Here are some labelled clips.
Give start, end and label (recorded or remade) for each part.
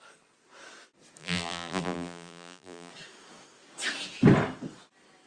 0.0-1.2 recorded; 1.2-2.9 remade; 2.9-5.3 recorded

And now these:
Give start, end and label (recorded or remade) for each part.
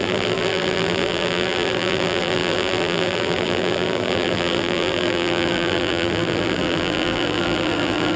0.0-8.2 remade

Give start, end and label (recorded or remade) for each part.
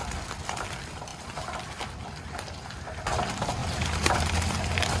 0.0-3.6 recorded; 3.6-4.3 remade; 4.3-5.0 recorded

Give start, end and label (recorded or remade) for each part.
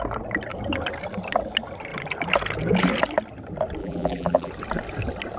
0.0-3.8 recorded; 3.8-4.5 remade; 4.5-5.4 recorded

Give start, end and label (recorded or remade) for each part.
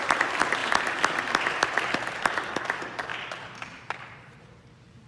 0.0-0.6 remade; 0.6-1.4 recorded; 1.4-3.1 remade; 3.1-3.8 recorded; 3.8-5.1 remade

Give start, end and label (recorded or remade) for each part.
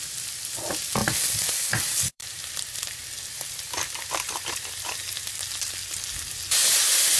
0.0-1.0 recorded; 1.0-5.3 remade; 5.3-6.6 recorded; 6.6-7.2 remade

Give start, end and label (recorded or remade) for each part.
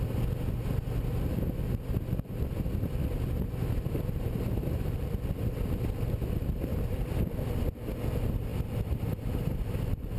0.0-10.2 remade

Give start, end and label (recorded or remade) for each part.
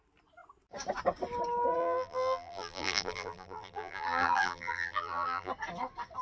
0.0-1.8 recorded; 1.8-5.5 remade; 5.5-6.2 recorded